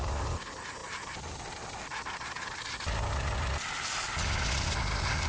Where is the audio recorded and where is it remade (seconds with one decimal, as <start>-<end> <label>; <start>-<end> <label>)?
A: 0.0-5.3 recorded